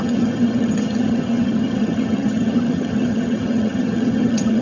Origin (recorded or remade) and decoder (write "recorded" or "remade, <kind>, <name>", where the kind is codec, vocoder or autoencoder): remade, vocoder, HiFi-GAN